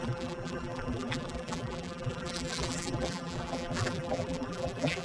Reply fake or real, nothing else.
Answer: fake